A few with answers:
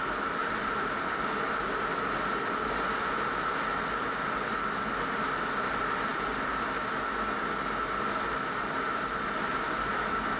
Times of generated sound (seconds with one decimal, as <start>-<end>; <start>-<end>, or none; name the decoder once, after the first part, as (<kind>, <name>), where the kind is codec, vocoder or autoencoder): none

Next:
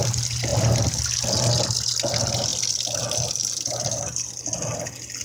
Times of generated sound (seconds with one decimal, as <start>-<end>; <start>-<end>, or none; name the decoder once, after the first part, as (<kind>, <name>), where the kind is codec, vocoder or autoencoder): 0.5-1.0 (vocoder, BigVGAN v2); 2.5-4.8

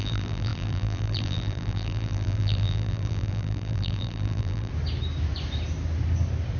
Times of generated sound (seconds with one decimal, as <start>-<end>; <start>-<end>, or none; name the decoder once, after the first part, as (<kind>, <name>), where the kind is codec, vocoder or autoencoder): 0.0-4.7 (vocoder, BigVGAN v2)